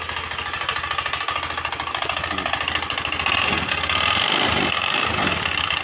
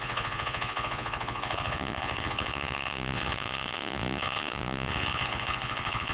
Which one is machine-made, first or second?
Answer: second